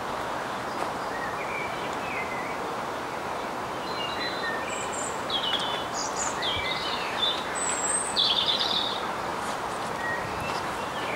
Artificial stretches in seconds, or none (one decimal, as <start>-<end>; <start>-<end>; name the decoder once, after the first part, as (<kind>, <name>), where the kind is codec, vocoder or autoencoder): 0.0-11.2 (vocoder, BigVGAN v2)